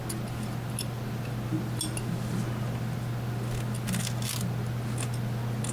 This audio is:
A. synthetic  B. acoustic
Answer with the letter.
B